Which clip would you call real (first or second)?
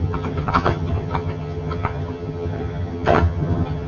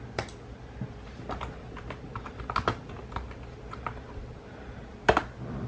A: second